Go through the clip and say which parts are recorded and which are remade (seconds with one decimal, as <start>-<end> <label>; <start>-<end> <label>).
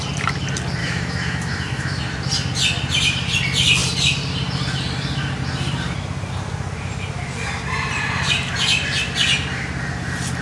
0.0-0.8 recorded; 0.8-2.0 remade; 2.0-10.4 recorded